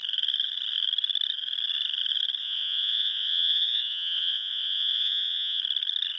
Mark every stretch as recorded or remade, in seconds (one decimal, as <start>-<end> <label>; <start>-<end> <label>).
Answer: 0.0-2.4 recorded; 2.4-5.6 remade; 5.6-6.2 recorded